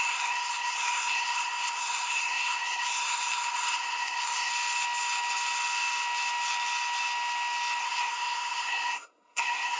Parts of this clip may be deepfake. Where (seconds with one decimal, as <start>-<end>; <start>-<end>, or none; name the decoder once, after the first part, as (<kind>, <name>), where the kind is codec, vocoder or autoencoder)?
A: 0.0-4.5 (codec, SNAC); 7.8-9.8